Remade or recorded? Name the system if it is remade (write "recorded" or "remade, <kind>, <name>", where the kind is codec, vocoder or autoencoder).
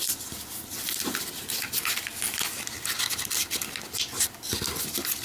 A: recorded